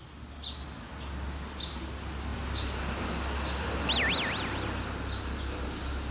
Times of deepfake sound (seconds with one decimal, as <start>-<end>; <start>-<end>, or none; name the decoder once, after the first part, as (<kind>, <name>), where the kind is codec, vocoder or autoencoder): none

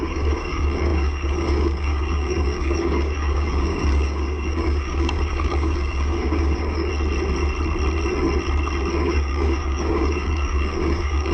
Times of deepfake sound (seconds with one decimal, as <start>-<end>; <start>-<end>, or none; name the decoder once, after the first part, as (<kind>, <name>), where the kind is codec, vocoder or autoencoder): 0.0-6.9 (codec, DAC); 8.9-11.3

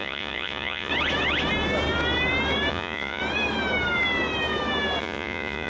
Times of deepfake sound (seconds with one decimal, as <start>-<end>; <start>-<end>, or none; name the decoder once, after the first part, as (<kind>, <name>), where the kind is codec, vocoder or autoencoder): 0.0-0.9 (vocoder, Vocos); 2.7-3.2; 5.0-5.7

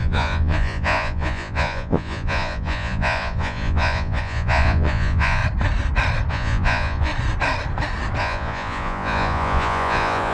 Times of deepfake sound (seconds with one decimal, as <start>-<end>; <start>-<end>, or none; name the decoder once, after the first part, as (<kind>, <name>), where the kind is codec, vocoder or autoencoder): 0.0-5.4 (vocoder, Vocos); 6.3-7.1; 8.2-10.3

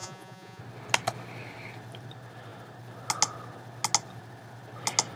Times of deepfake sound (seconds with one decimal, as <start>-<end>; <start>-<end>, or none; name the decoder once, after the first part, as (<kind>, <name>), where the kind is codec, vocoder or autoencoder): 0.0-0.6 (vocoder, Vocos)